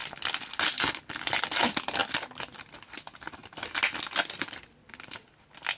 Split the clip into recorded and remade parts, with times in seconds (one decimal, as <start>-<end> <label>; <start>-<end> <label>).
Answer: 0.0-5.8 recorded